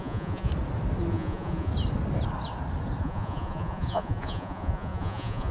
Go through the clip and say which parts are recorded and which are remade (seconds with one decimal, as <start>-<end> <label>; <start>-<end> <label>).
0.0-0.5 remade; 0.5-1.1 recorded; 1.1-1.7 remade; 1.7-3.0 recorded; 3.0-5.5 remade